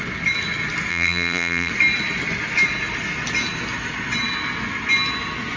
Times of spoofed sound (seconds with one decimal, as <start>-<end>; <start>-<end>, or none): 0.9-1.7

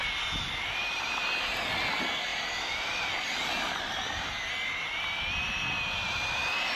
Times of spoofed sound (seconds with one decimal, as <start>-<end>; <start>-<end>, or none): 2.3-3.8

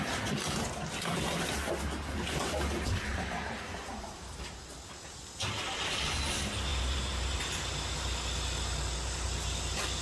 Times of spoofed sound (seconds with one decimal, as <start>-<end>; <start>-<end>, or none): 3.1-4.7; 6.7-7.4

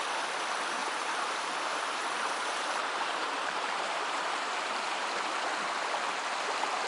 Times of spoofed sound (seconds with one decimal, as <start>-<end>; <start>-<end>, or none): 0.8-4.9

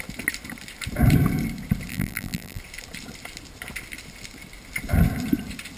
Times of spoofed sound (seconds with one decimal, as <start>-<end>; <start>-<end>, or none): 1.9-2.6